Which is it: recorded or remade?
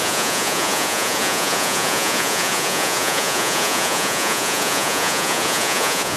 remade